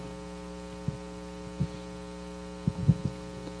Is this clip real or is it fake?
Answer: real